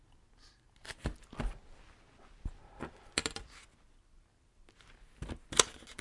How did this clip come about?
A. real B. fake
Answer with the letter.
A